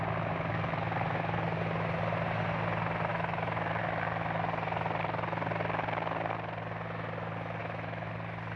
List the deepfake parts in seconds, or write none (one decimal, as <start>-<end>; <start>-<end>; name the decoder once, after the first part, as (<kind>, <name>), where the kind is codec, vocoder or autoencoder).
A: 3.1-3.8 (autoencoder, DAC-VAE); 7.6-8.1